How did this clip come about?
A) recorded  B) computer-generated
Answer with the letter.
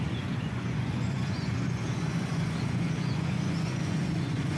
B